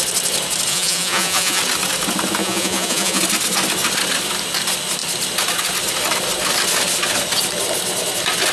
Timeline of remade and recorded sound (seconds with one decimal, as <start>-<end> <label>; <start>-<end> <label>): 0.0-0.7 recorded; 0.7-1.6 remade; 1.6-2.4 recorded; 2.4-3.2 remade; 3.2-8.5 recorded